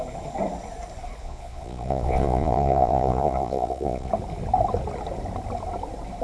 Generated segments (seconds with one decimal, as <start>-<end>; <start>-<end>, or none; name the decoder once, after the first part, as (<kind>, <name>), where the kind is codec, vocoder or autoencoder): 1.2-4.1 (vocoder, Vocos)